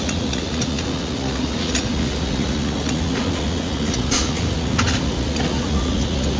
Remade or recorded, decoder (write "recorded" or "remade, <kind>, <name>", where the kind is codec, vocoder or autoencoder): remade, vocoder, Vocos